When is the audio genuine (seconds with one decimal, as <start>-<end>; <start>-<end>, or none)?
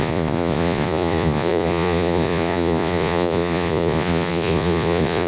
none